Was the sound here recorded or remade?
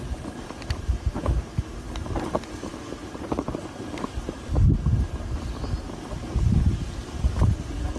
recorded